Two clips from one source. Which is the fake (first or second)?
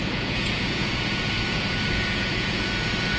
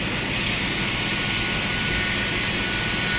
first